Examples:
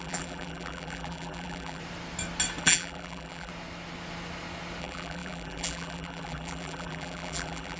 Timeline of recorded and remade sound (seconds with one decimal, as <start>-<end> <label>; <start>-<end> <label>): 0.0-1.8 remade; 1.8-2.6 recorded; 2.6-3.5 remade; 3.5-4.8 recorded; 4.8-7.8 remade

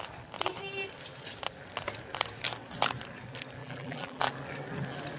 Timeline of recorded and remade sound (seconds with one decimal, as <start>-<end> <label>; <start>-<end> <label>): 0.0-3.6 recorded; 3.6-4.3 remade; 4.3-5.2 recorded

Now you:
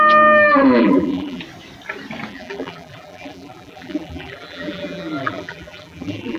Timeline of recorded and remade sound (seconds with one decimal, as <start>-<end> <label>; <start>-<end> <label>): 0.0-0.8 recorded; 0.8-1.4 remade; 1.4-2.3 recorded; 2.3-6.4 remade

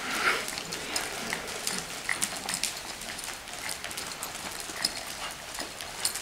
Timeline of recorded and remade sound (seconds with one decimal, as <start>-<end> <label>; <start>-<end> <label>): 0.0-6.2 recorded

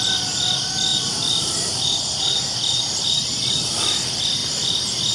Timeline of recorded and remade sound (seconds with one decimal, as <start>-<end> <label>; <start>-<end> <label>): 0.0-0.9 recorded; 0.9-4.0 remade; 4.0-5.1 recorded